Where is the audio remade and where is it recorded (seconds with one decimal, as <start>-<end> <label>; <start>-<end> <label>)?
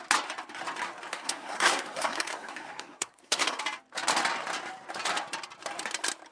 0.0-1.1 recorded; 1.1-3.6 remade; 3.6-6.3 recorded